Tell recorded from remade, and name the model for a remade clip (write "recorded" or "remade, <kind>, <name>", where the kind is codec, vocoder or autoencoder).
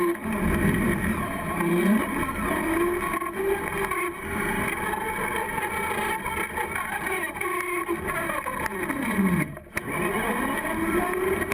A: recorded